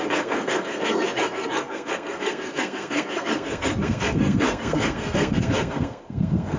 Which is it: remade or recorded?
remade